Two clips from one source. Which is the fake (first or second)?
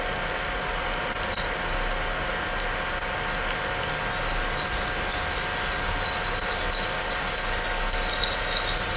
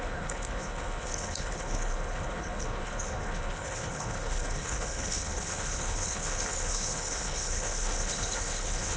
second